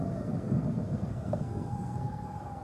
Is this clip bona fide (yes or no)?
no